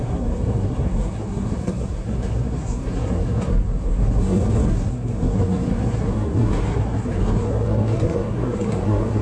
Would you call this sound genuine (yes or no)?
no